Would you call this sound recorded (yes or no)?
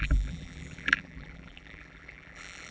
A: no